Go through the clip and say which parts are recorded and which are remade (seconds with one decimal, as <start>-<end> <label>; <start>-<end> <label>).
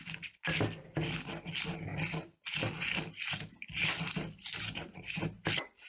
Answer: 0.0-5.9 recorded